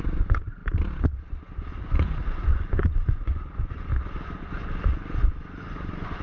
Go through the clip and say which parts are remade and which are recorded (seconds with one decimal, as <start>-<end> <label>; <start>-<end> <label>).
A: 0.0-0.6 remade; 0.6-1.8 recorded; 1.8-3.9 remade; 3.9-4.4 recorded; 4.4-6.2 remade